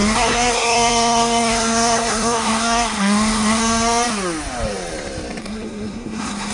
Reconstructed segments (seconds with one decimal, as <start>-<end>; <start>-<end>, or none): 0.0-3.6; 5.4-6.5